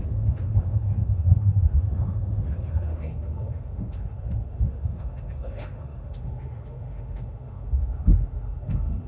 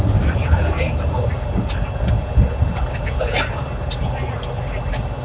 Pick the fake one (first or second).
first